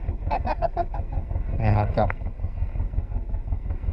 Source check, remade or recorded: remade